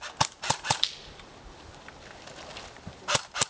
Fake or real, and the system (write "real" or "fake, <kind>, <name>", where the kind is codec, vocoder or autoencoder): real